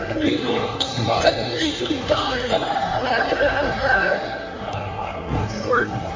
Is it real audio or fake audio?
fake